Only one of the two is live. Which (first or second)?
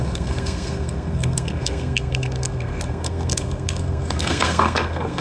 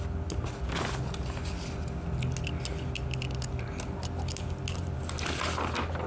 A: second